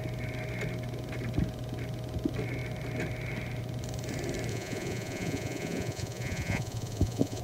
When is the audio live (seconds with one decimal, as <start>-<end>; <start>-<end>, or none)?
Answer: 0.0-4.5